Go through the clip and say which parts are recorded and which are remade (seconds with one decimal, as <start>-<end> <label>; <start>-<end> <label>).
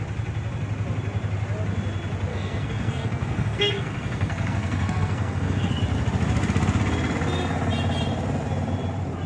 0.0-2.3 recorded; 2.3-5.8 remade; 5.8-9.3 recorded